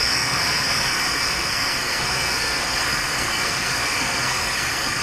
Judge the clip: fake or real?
fake